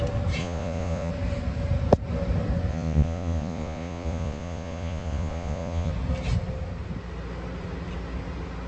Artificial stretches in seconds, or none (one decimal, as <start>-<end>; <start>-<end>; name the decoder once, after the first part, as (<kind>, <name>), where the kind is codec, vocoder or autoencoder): 0.4-1.1 (vocoder, Vocos); 2.7-5.9

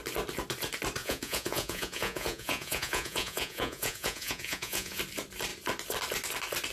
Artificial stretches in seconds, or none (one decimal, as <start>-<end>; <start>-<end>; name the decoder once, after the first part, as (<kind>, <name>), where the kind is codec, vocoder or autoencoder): 1.0-5.0 (vocoder, Vocos)

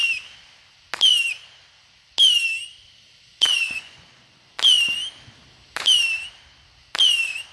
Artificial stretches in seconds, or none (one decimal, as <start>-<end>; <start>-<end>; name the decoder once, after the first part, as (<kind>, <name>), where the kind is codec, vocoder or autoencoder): 3.3-4.6 (vocoder, Vocos)

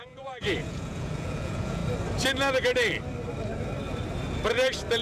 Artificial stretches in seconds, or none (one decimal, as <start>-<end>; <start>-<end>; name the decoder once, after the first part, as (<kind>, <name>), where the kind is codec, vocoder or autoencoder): 0.0-1.8 (vocoder, Vocos)

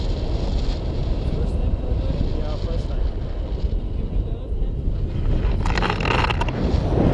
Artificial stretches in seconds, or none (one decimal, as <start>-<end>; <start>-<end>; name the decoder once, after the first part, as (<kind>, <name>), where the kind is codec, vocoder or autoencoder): none

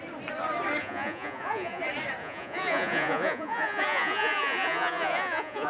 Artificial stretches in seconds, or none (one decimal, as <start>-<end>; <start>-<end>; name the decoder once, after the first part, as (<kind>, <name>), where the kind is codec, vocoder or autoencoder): 0.8-1.8 (vocoder, Vocos); 2.2-5.7

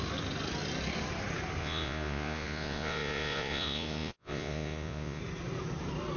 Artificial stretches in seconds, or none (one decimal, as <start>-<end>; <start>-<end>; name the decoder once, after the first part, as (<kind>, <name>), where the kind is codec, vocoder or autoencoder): 1.6-5.2 (vocoder, Vocos)